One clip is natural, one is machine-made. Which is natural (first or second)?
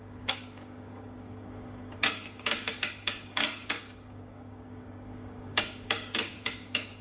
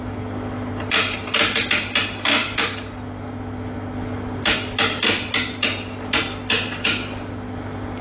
second